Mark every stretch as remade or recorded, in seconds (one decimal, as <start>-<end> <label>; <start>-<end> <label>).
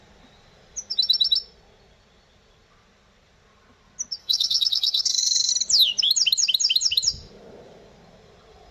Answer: 0.0-4.2 recorded; 4.2-5.5 remade; 5.5-8.7 recorded